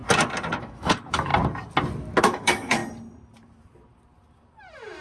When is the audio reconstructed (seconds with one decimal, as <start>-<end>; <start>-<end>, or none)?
0.6-1.3; 2.2-2.8